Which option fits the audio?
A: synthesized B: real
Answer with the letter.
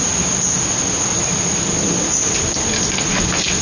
B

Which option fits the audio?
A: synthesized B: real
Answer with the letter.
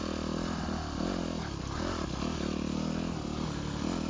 B